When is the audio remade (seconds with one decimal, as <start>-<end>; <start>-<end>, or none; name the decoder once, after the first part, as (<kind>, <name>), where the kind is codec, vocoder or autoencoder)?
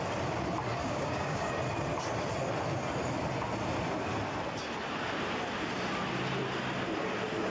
0.8-1.5 (codec, DAC)